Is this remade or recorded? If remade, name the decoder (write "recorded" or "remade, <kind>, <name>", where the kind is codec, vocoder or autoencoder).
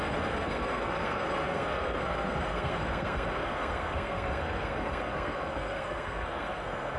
remade, codec, SNAC